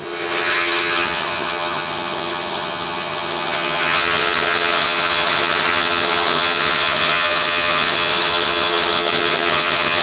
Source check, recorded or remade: remade